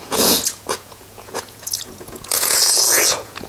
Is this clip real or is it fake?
fake